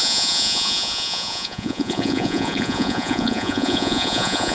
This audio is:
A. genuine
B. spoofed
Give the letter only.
B